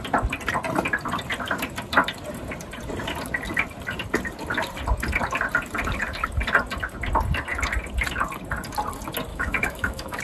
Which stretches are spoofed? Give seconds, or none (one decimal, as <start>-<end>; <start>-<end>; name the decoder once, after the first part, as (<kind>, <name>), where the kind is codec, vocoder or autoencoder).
9.3-10.2 (autoencoder, DAC-VAE)

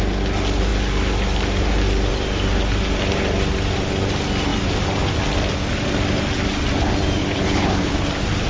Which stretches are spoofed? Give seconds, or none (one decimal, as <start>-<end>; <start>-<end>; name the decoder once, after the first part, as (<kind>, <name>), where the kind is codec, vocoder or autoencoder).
7.2-7.9 (codec, HILCodec)

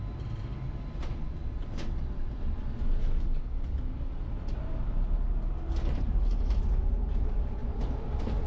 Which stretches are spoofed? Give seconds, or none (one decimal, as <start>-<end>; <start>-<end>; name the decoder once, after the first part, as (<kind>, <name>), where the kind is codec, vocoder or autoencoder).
none

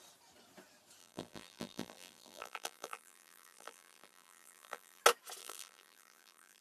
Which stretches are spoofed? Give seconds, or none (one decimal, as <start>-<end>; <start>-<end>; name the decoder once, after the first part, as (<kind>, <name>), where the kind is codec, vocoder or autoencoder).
1.0-5.0 (vocoder, BigVGAN v2); 5.4-6.6